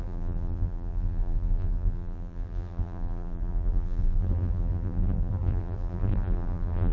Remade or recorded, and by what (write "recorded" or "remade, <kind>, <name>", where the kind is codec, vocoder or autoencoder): remade, vocoder, BigVGAN v2